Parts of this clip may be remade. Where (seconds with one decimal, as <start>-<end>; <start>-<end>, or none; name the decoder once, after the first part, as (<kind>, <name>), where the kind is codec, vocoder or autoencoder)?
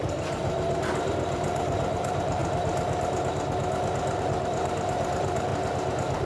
0.0-2.4 (vocoder, BigVGAN v2); 4.2-5.5